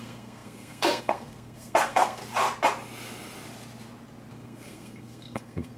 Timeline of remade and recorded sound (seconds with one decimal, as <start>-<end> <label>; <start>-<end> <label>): 0.0-2.2 remade; 2.2-4.3 recorded; 4.3-5.8 remade